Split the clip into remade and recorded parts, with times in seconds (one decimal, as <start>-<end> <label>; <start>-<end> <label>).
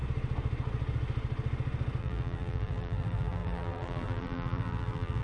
0.0-2.0 recorded; 2.0-5.2 remade